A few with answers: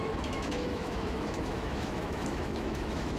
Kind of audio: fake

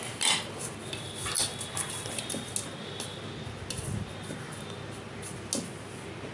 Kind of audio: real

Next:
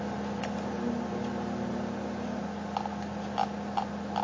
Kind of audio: real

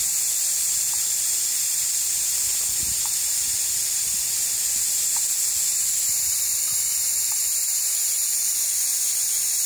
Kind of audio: real